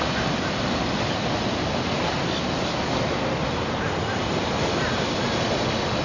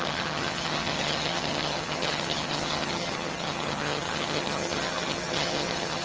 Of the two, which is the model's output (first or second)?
second